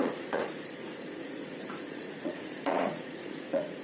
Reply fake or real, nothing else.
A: fake